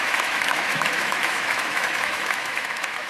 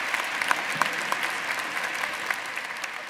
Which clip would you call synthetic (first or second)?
first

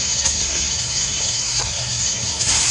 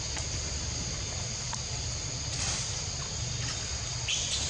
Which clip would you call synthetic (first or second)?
first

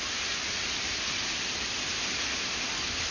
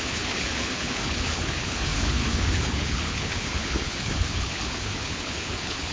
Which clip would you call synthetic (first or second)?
second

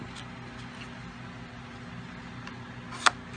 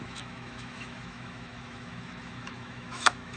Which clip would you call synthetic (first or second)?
second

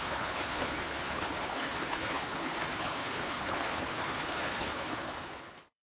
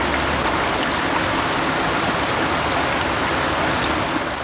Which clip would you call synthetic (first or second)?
first